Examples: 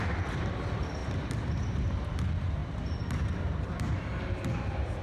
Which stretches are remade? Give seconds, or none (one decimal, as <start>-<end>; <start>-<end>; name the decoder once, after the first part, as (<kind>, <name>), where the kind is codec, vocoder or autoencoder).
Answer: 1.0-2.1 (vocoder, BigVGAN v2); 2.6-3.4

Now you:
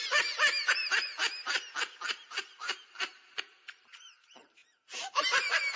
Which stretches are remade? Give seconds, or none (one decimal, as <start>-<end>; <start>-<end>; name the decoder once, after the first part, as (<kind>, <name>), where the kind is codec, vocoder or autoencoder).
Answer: 0.0-1.2 (vocoder, BigVGAN v2); 1.9-5.8

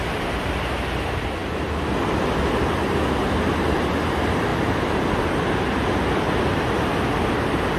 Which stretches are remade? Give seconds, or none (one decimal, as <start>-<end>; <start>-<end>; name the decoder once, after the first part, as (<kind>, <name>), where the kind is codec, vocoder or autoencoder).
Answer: none

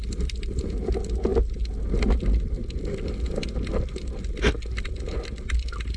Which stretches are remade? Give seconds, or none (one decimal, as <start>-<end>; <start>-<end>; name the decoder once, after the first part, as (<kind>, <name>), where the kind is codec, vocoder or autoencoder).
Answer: none

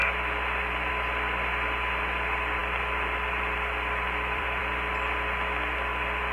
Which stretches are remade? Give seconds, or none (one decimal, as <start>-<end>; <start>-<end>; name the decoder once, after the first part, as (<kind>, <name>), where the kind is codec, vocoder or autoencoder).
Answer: 2.6-4.6 (vocoder, BigVGAN v2)